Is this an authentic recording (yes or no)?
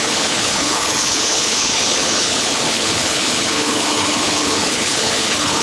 no